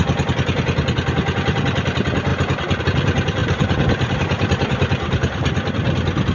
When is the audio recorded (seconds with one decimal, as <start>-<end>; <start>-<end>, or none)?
0.0-3.4; 5.7-6.3